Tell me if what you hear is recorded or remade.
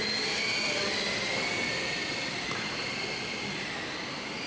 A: recorded